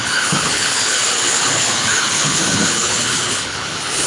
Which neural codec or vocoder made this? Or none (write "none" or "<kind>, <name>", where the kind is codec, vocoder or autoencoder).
codec, HILCodec